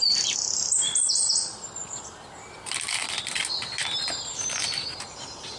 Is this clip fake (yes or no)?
no